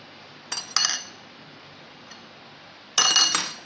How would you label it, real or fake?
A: real